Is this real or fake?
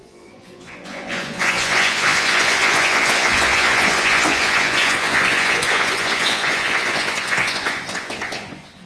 fake